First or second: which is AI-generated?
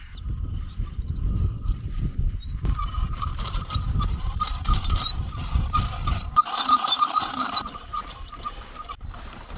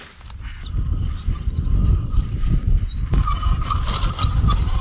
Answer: first